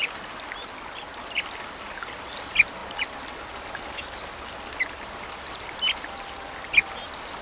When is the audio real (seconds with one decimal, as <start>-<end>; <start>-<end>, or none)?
0.0-7.4